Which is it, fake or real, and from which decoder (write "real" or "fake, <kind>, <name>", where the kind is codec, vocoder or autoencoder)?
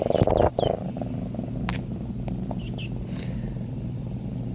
real